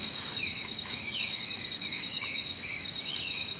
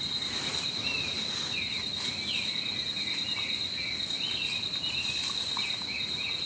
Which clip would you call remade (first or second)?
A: first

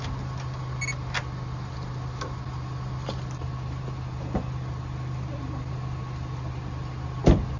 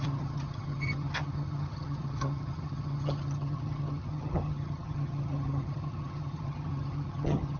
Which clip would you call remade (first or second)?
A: second